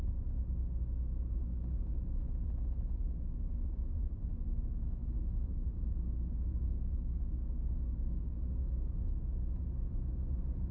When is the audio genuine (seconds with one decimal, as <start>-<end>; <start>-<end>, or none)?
0.0-4.3; 8.3-10.7